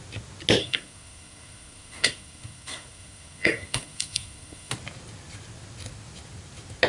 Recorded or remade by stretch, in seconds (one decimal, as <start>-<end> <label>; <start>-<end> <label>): 0.0-0.6 recorded; 0.6-4.7 remade; 4.7-6.9 recorded